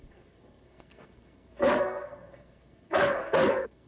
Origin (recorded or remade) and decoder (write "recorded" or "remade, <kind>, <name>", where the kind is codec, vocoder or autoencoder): remade, codec, SNAC